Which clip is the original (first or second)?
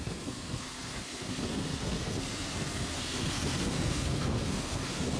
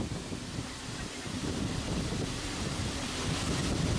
second